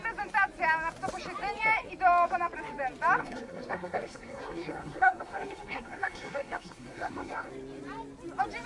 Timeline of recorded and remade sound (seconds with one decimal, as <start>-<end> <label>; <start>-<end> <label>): 0.0-3.2 recorded; 3.2-7.5 remade; 7.5-8.7 recorded